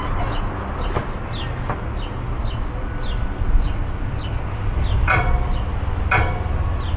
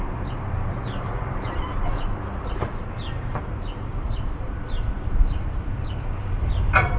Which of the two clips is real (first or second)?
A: first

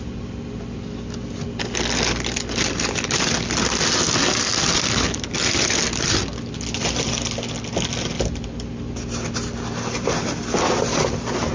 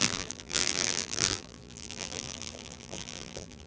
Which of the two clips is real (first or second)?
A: first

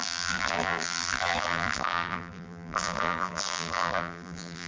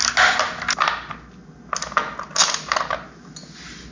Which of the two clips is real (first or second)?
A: second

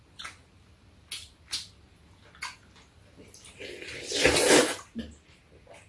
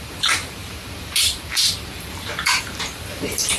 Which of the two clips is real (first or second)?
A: first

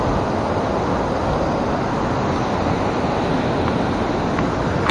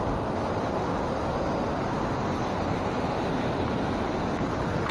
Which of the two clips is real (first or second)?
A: first